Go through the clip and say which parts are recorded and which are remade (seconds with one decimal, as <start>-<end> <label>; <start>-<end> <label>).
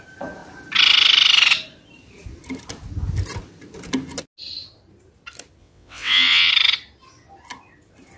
0.0-5.6 recorded; 5.6-6.5 remade; 6.5-8.2 recorded